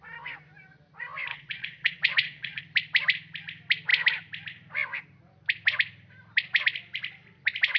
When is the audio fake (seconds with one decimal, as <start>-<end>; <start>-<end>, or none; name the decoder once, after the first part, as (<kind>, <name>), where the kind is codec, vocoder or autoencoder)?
1.3-2.6 (vocoder, WaveNeXt)